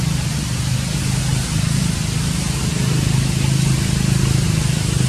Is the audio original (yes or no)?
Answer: yes